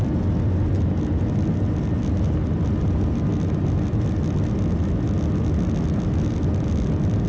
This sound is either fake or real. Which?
real